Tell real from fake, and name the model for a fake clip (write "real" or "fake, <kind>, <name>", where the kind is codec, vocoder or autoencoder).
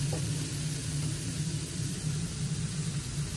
fake, vocoder, BigVGAN v2